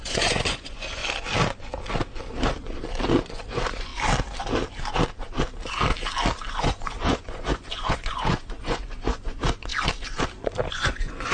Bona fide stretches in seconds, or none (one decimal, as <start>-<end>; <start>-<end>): 1.0-3.3; 3.9-6.5; 9.7-10.7